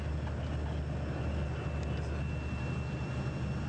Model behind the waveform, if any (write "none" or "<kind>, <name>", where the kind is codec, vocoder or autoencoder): none